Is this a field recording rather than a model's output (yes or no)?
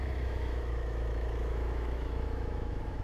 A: no